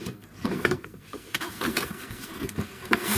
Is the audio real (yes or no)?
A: no